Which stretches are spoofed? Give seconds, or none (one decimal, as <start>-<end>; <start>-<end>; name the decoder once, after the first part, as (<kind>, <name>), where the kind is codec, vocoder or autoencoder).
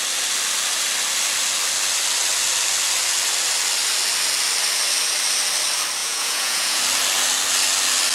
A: 6.0-6.8 (vocoder, Vocos)